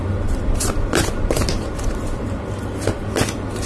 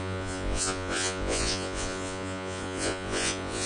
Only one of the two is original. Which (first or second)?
first